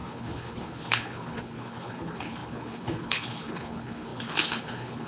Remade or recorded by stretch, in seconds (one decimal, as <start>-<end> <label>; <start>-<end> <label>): 0.0-5.1 remade